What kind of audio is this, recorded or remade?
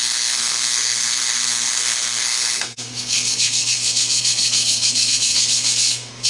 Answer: remade